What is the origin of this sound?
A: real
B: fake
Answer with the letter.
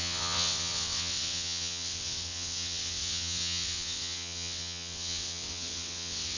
B